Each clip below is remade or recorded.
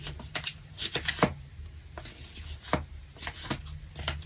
recorded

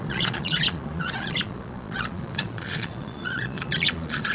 remade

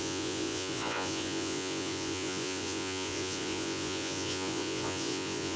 remade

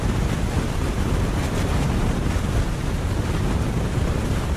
remade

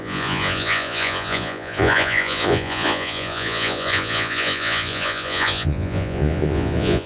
remade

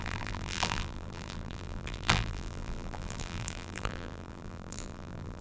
remade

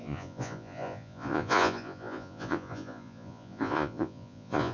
remade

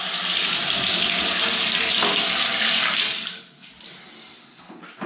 recorded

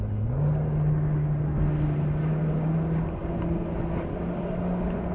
recorded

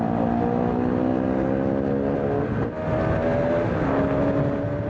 recorded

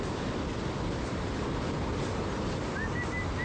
recorded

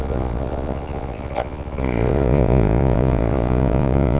remade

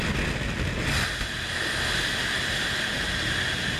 recorded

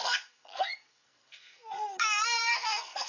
remade